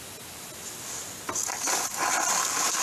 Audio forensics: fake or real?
real